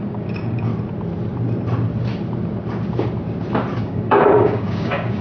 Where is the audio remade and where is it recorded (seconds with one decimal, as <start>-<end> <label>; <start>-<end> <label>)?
0.0-0.7 remade; 0.7-3.8 recorded; 3.8-5.2 remade